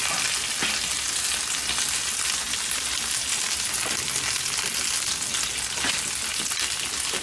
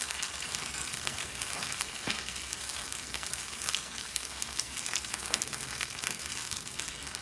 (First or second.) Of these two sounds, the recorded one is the first